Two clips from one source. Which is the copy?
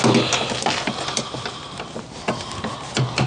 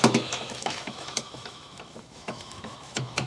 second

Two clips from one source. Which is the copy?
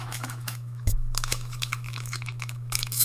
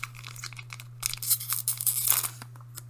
first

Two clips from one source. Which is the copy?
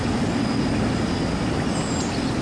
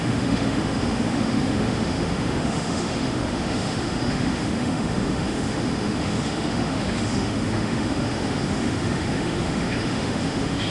second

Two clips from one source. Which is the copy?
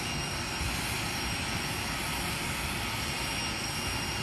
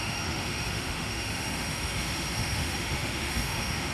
second